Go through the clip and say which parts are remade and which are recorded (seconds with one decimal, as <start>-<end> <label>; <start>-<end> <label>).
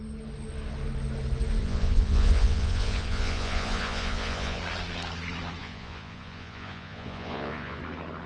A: 0.0-1.6 recorded; 1.6-4.6 remade; 4.6-5.6 recorded; 5.6-7.8 remade; 7.8-8.3 recorded